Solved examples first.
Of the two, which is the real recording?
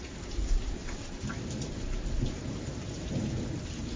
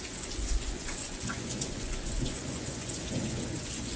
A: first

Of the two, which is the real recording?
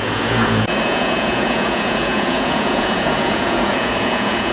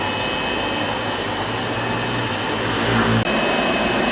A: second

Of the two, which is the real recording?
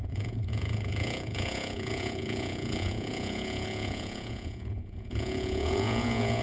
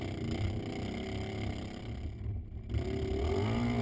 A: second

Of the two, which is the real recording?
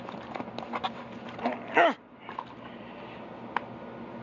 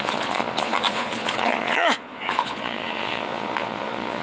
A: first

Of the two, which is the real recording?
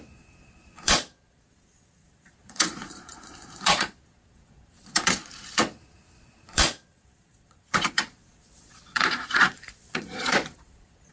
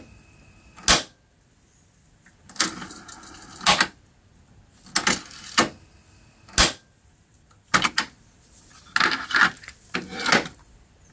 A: second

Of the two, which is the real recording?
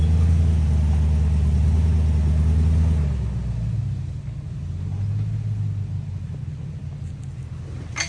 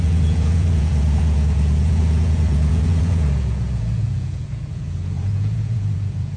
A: first